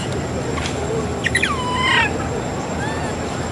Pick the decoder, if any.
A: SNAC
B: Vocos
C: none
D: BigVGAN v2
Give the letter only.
C